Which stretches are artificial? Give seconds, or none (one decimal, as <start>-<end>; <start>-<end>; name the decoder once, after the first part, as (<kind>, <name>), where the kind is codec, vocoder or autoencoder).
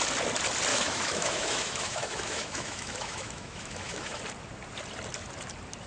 0.7-4.2 (autoencoder, DAC-VAE)